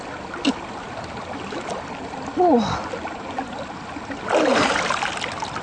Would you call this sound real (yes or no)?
yes